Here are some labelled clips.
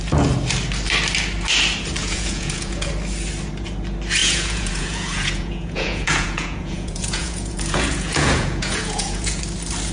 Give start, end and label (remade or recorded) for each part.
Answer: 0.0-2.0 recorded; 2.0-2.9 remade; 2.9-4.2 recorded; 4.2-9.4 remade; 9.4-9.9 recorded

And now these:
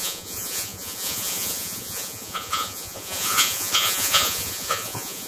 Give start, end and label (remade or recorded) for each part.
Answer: 0.0-5.3 remade